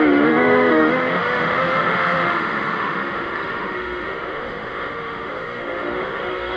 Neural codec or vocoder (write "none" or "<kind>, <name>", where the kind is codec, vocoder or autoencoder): autoencoder, DAC-VAE